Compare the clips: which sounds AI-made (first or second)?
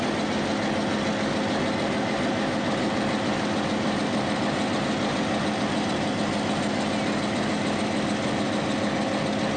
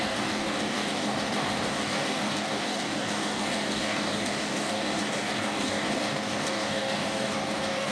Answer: second